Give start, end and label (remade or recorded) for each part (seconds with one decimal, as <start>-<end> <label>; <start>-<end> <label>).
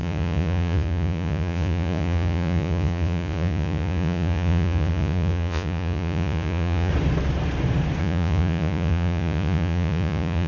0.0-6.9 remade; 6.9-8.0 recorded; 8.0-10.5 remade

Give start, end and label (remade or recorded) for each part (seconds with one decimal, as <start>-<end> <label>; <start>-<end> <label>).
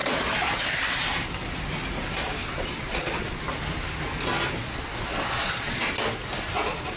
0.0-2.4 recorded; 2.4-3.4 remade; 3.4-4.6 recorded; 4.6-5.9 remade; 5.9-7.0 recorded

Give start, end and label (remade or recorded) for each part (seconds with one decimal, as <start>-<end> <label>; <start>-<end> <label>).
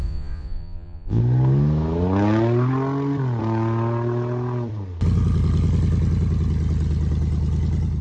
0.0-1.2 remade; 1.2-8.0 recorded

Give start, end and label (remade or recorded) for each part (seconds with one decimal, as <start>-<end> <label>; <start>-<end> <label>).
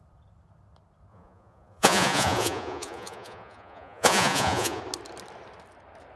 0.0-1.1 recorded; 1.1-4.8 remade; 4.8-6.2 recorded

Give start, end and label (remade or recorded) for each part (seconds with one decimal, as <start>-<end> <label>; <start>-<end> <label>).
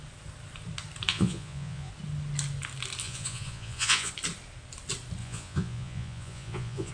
0.0-1.1 recorded; 1.1-1.9 remade; 1.9-3.0 recorded; 3.0-4.1 remade; 4.1-5.2 recorded; 5.2-6.9 remade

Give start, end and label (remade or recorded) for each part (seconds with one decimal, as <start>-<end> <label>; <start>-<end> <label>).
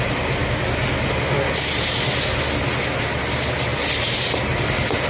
0.0-5.1 recorded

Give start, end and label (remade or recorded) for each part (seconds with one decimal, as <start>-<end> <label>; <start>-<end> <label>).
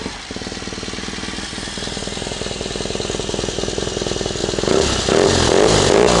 0.0-6.2 recorded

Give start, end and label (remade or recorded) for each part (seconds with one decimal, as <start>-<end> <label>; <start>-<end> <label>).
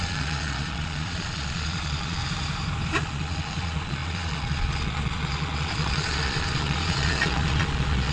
0.0-2.2 remade; 2.2-3.0 recorded; 3.0-8.1 remade